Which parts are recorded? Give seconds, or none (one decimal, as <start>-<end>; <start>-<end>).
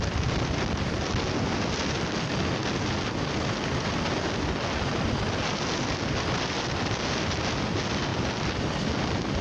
0.0-9.4